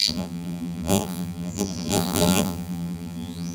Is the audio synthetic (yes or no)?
yes